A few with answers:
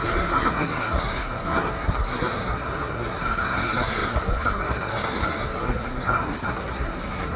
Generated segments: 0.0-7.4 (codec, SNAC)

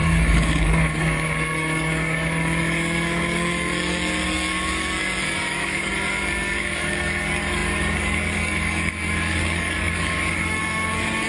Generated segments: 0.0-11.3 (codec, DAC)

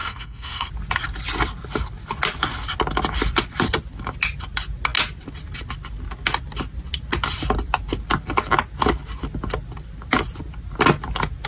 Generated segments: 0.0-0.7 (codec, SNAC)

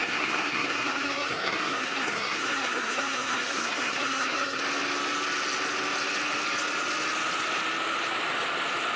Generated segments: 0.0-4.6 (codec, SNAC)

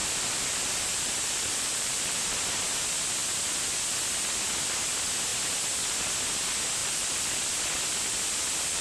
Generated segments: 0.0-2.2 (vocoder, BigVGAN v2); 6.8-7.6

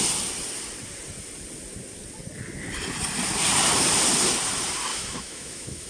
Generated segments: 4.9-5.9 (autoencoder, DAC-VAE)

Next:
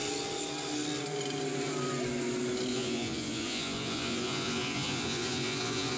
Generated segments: 2.7-6.0 (vocoder, Vocos)